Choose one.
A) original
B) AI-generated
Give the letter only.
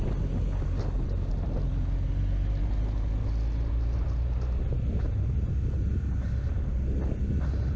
A